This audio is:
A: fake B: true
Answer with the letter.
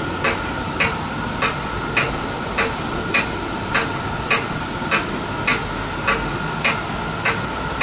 B